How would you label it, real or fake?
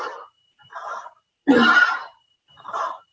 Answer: fake